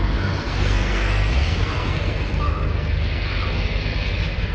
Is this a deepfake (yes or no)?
yes